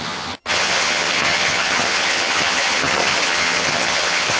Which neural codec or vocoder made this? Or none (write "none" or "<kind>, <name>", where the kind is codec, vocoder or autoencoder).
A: vocoder, HiFi-GAN